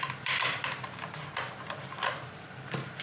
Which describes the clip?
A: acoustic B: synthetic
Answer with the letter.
B